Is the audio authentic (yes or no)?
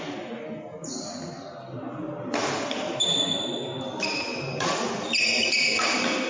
yes